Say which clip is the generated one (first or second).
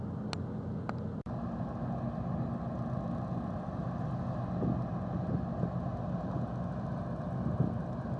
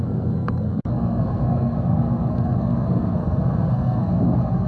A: second